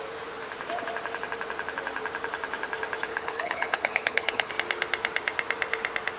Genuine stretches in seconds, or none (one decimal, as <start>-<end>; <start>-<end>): 0.0-3.1; 4.5-6.2